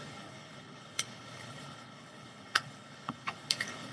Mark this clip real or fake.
fake